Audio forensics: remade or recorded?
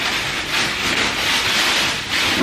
recorded